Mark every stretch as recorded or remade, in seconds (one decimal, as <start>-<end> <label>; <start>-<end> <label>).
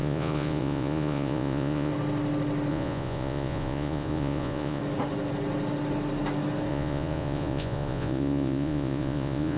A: 0.0-1.9 remade; 1.9-2.7 recorded; 2.7-4.8 remade; 4.8-6.7 recorded; 6.7-9.6 remade